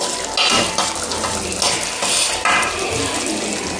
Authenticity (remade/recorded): recorded